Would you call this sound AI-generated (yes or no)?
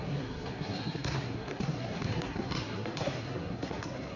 yes